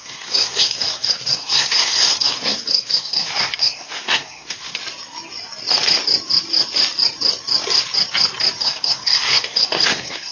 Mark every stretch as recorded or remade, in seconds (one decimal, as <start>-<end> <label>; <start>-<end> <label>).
0.0-4.8 remade; 4.8-8.6 recorded; 8.6-10.3 remade